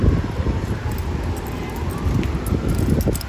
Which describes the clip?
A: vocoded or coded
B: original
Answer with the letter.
B